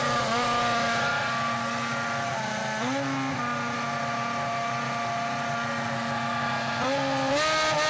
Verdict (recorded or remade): recorded